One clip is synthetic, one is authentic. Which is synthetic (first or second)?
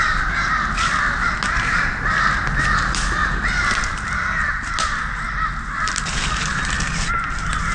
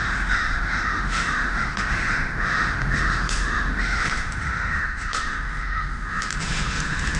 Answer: second